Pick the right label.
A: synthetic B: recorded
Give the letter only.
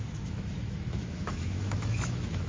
A